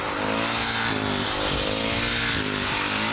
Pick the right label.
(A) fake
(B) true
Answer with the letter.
B